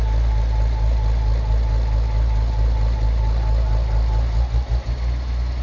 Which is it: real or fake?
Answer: real